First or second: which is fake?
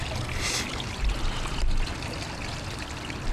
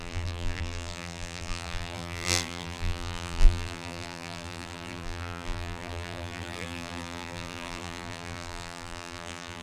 second